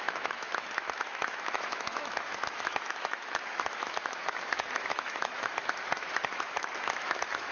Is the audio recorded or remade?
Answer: remade